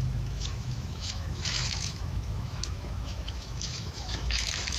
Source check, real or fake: fake